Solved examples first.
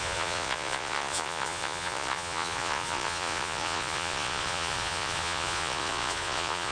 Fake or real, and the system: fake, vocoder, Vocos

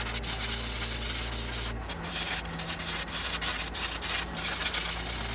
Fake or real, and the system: real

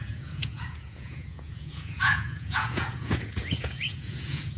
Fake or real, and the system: fake, vocoder, Vocos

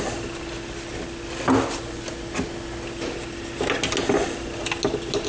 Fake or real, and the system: real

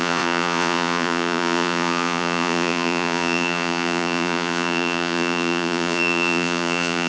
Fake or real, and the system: fake, vocoder, Vocos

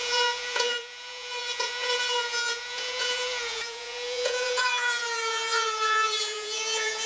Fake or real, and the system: fake, vocoder, Vocos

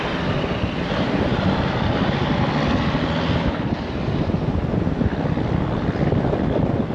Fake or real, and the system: real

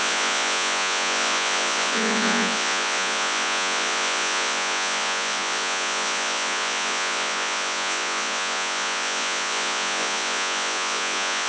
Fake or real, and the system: fake, vocoder, Vocos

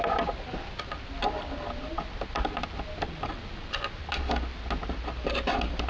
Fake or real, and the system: real